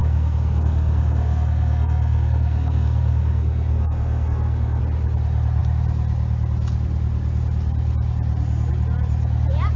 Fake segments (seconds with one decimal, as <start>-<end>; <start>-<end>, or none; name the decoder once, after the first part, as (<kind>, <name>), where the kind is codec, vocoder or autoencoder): 0.0-4.8 (codec, SNAC)